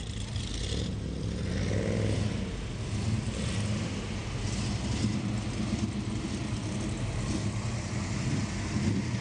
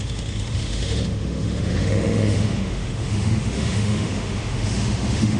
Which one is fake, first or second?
second